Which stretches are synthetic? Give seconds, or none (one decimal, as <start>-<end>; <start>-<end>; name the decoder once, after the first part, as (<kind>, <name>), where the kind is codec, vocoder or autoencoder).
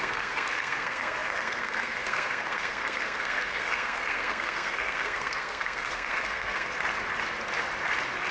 0.0-6.7 (codec, SNAC)